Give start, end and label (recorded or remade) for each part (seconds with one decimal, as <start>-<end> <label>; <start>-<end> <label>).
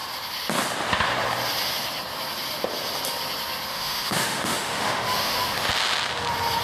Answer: 0.0-3.7 recorded; 3.7-5.7 remade; 5.7-6.6 recorded